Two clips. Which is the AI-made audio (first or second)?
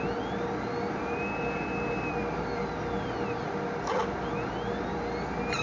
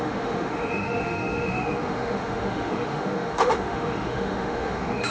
second